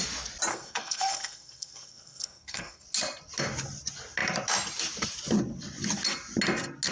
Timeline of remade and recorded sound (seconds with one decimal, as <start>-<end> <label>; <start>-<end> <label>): 0.0-0.5 recorded; 0.5-2.8 remade; 2.8-6.9 recorded